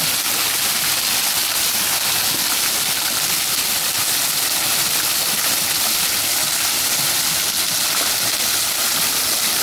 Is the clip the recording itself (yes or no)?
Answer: yes